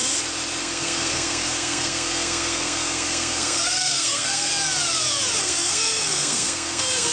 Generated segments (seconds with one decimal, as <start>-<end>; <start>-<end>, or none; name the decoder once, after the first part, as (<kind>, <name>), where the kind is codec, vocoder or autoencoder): 0.6-4.5 (codec, SNAC); 5.4-7.1